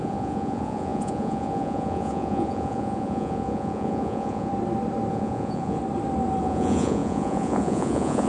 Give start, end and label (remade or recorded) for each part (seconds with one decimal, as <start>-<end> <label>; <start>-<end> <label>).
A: 0.0-4.5 remade; 4.5-5.1 recorded; 5.1-5.8 remade; 5.8-6.4 recorded; 6.4-8.3 remade